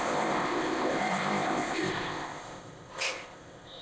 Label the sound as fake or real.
fake